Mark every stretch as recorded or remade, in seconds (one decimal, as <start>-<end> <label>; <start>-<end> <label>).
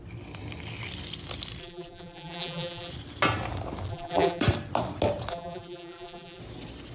0.0-1.6 recorded; 1.6-2.9 remade; 2.9-3.9 recorded; 3.9-4.4 remade; 4.4-5.3 recorded; 5.3-6.4 remade; 6.4-6.9 recorded